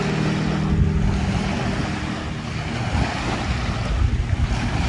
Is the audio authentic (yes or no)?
yes